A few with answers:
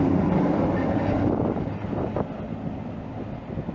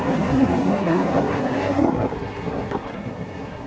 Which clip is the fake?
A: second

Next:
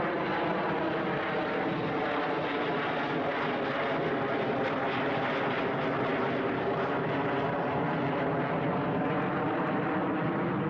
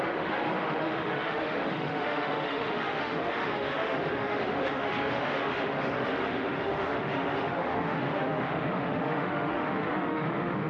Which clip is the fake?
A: second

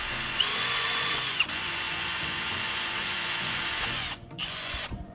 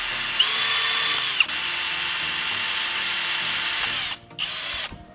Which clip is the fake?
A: first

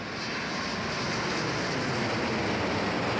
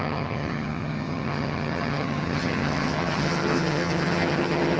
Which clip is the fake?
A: second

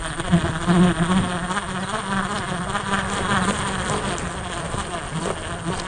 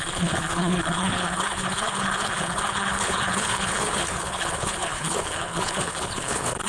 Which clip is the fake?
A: second